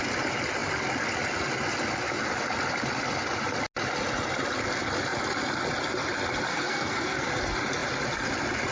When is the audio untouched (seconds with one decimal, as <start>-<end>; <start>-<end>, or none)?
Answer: 0.0-6.5; 7.3-8.7